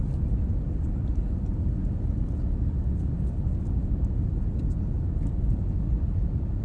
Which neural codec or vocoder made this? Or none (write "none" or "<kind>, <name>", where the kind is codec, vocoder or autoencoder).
none